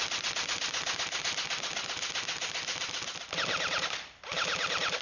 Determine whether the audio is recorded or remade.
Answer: recorded